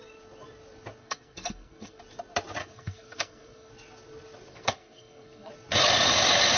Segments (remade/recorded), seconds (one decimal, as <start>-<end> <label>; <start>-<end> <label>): 0.0-1.0 recorded; 1.0-2.0 remade; 2.0-2.6 recorded; 2.6-3.7 remade; 3.7-4.5 recorded; 4.5-5.5 remade; 5.5-6.6 recorded